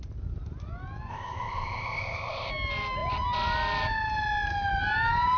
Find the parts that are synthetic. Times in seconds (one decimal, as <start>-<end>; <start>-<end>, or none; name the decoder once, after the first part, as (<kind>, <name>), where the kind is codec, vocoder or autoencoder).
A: 1.1-2.5 (codec, ZipCodec)

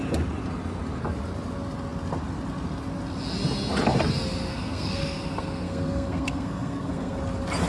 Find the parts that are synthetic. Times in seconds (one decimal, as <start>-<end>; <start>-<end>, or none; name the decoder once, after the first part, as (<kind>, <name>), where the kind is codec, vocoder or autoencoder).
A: 4.5-7.2 (codec, SNAC)

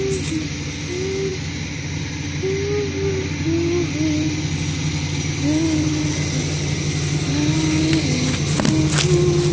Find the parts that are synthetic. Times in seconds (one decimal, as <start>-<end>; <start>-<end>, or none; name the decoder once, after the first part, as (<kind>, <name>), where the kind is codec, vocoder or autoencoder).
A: none

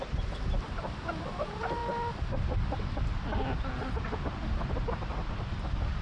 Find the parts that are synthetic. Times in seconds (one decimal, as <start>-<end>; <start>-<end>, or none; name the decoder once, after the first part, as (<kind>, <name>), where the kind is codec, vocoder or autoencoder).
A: none

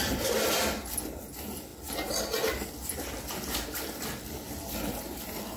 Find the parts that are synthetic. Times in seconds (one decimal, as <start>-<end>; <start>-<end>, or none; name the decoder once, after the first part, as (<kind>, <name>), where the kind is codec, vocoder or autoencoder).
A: none

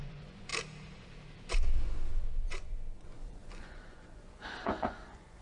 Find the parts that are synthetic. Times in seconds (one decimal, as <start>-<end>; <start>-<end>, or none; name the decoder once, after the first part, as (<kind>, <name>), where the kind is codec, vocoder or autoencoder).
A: 0.0-0.5 (vocoder, Vocos); 1.5-5.4

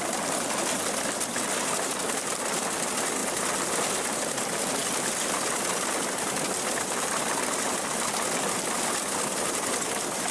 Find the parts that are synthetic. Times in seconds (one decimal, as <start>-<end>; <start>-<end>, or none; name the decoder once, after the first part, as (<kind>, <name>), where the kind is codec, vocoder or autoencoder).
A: none

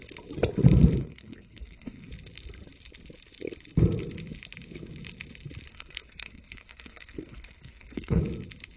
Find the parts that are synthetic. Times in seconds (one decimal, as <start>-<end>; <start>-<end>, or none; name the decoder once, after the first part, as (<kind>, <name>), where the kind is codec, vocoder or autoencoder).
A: 1.0-2.1 (codec, SNAC); 5.7-8.2